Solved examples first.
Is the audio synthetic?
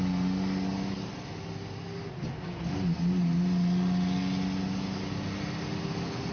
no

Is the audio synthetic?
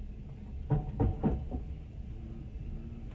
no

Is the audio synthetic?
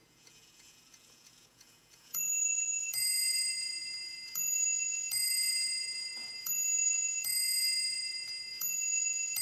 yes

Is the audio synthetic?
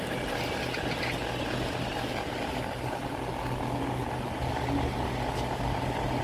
no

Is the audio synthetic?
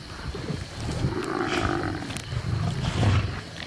no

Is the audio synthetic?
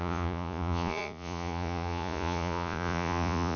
yes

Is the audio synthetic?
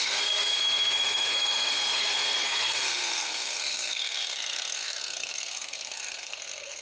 yes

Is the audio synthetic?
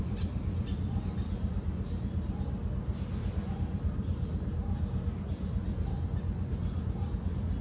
no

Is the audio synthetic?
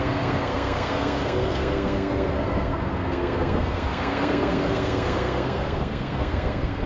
yes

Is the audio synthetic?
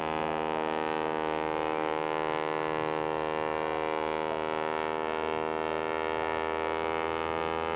no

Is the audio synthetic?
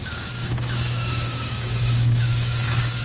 yes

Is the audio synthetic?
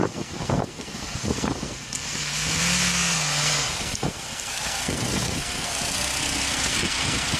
yes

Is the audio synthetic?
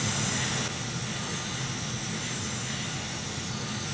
no